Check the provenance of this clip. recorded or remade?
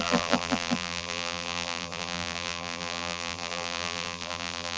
remade